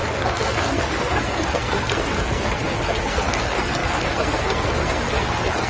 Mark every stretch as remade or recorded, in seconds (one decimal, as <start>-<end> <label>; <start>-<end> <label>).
0.0-5.7 remade